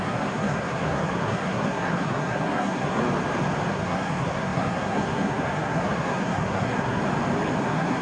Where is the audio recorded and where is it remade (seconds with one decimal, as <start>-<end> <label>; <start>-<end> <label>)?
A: 0.0-3.0 remade; 3.0-3.7 recorded; 3.7-7.0 remade; 7.0-7.6 recorded; 7.6-8.0 remade